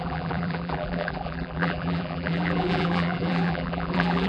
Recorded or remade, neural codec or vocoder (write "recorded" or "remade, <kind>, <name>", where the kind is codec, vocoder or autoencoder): remade, vocoder, BigVGAN v2